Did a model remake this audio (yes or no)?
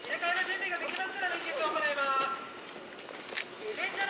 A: no